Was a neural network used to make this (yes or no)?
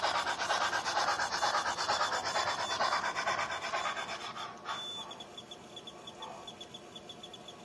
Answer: no